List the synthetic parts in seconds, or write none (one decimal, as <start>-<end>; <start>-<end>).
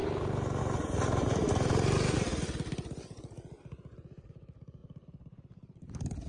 0.6-2.3; 4.3-6.3